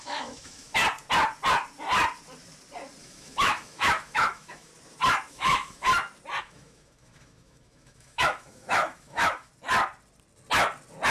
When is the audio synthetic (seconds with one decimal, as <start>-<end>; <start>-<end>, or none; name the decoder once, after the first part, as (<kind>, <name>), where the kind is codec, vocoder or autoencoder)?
0.0-0.8 (autoencoder, DAC-VAE); 3.0-4.7; 5.3-5.9; 6.4-9.5